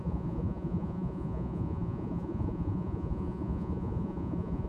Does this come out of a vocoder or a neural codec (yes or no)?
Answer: yes